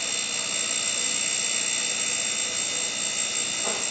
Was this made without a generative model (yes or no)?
yes